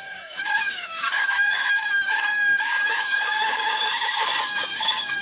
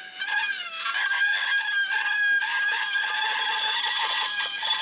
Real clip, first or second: second